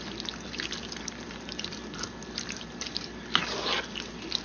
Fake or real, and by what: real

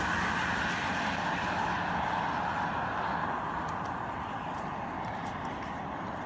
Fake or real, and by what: real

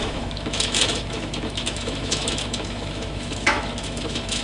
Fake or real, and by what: fake, autoencoder, DAC-VAE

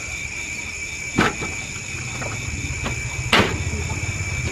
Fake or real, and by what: real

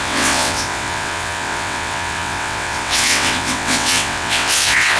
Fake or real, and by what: fake, vocoder, WaveNeXt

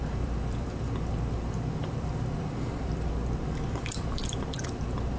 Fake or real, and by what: fake, vocoder, BigVGAN v2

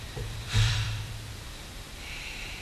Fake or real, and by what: fake, vocoder, BigVGAN v2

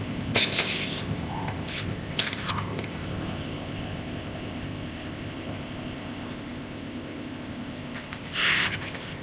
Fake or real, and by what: fake, codec, ZipCodec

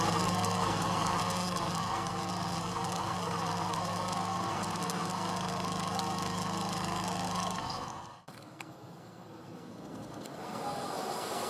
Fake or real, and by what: fake, codec, SNAC